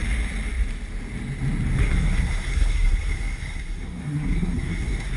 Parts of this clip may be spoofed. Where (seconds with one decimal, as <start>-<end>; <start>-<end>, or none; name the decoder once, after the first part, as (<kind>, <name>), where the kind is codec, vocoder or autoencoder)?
1.8-5.2 (codec, SNAC)